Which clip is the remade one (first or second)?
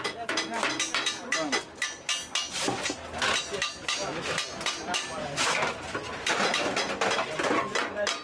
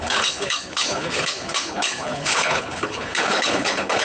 second